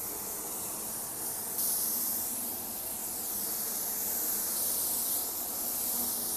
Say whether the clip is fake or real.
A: real